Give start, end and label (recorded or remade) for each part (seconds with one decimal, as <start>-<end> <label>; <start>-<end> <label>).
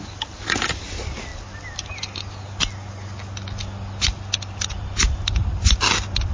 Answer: 0.0-6.3 recorded